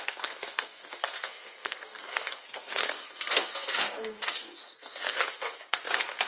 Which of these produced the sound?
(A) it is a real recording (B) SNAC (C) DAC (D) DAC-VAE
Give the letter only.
B